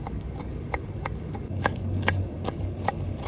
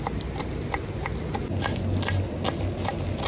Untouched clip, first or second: second